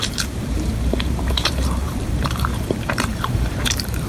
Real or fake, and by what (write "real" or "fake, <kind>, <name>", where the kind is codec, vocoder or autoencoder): fake, vocoder, BigVGAN v2